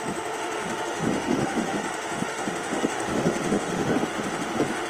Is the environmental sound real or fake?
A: fake